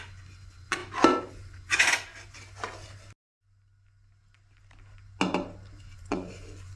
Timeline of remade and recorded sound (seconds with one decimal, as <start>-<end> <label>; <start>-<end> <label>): 0.0-0.8 remade; 0.8-1.3 recorded; 1.3-2.1 remade; 2.1-5.8 recorded; 5.8-6.8 remade